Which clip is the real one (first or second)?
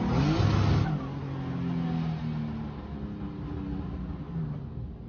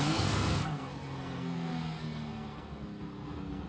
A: first